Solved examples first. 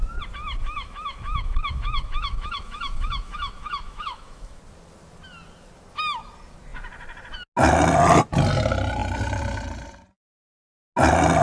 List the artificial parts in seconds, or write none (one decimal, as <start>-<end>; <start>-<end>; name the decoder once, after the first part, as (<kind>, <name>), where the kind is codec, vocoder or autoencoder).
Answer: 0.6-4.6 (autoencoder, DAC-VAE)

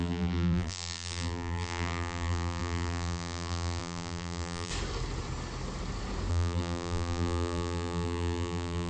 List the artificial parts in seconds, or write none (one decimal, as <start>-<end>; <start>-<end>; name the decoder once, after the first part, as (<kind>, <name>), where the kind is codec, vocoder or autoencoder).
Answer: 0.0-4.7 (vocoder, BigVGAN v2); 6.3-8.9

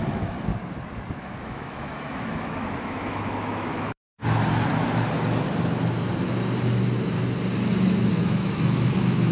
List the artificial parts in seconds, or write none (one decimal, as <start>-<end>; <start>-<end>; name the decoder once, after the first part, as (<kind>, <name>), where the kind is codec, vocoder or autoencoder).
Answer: 0.0-0.5 (autoencoder, DAC-VAE); 1.2-4.2; 8.1-9.3

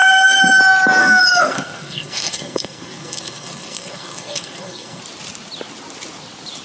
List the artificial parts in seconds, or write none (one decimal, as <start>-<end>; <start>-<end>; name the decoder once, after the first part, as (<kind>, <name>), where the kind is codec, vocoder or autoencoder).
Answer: 0.0-0.6 (codec, SNAC); 1.0-5.0

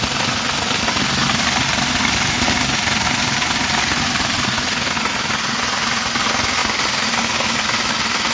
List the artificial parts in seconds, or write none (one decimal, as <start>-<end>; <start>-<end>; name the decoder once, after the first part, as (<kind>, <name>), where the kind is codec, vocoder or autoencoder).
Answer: none

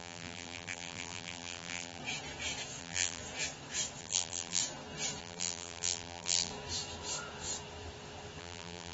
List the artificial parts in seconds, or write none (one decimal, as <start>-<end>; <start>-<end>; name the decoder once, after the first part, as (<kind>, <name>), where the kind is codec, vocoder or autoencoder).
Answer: 0.0-2.0 (vocoder, BigVGAN v2); 2.8-3.2; 4.0-4.6; 5.2-6.5; 8.4-8.9

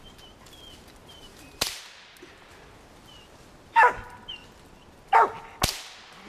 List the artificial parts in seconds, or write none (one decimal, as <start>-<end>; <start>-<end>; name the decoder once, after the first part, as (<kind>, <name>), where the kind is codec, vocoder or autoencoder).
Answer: 1.0-1.8 (vocoder, BigVGAN v2)

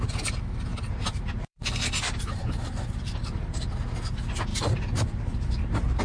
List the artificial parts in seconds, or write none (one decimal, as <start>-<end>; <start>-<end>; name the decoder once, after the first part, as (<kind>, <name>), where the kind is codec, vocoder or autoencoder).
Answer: 0.7-3.6 (vocoder, BigVGAN v2); 4.5-6.0